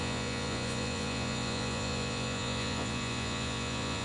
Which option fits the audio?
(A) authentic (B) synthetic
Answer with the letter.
B